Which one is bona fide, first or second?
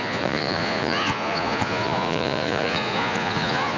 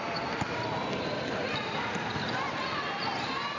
second